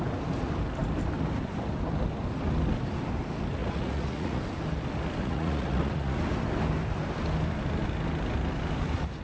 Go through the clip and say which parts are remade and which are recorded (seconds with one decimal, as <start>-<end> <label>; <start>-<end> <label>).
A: 0.0-3.6 recorded; 3.6-4.4 remade; 4.4-5.2 recorded; 5.2-6.2 remade; 6.2-9.2 recorded